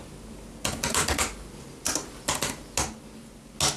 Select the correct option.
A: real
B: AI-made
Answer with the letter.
A